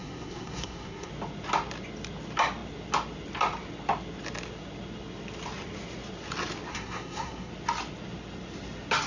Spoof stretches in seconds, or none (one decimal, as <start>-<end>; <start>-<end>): 0.0-1.1; 6.7-7.5